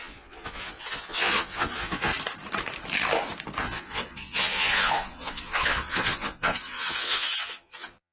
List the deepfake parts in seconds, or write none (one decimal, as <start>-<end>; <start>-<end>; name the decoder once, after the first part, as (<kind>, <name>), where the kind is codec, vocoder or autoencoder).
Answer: 0.0-2.1 (vocoder, Vocos); 3.6-8.1

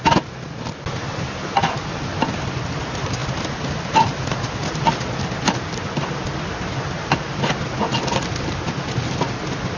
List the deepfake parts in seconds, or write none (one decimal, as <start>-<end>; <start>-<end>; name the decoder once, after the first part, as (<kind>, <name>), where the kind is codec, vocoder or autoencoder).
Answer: none

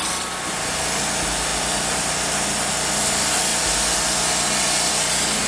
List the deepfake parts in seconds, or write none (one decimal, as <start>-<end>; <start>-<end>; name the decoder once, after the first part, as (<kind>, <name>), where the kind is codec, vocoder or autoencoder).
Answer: none